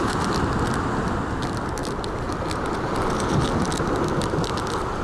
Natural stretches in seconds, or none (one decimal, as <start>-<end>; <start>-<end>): 0.0-5.0